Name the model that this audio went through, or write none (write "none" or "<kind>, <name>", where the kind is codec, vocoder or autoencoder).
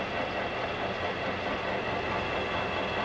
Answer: none